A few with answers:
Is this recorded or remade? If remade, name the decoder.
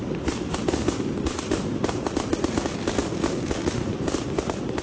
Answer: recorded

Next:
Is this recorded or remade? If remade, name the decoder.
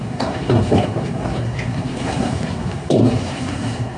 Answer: remade, codec, SNAC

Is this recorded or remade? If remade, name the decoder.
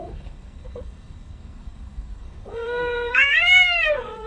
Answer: remade, codec, SNAC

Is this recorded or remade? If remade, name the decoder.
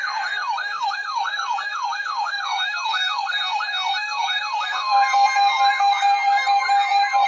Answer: remade, codec, SNAC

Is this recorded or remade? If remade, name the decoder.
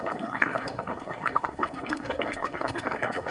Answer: remade, codec, SNAC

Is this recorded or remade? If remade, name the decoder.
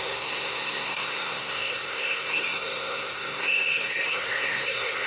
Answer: remade, codec, SNAC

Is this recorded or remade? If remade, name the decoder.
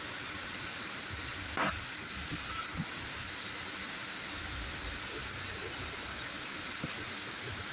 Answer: recorded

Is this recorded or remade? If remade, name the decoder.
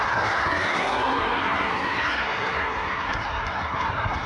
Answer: remade, codec, SNAC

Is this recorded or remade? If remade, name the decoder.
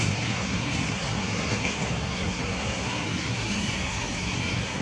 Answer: remade, codec, SNAC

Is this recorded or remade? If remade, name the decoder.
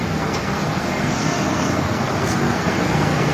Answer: remade, codec, SNAC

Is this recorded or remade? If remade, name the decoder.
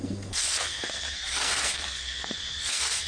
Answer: remade, codec, SNAC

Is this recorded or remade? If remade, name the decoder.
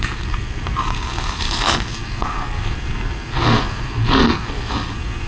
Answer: remade, codec, SNAC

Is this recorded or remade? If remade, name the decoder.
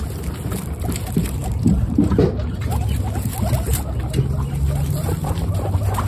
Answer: recorded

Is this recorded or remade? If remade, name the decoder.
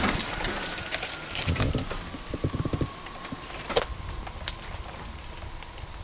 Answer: recorded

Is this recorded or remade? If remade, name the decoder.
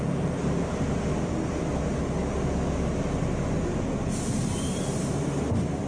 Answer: recorded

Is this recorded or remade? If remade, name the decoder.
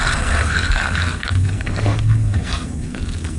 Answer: remade, codec, SNAC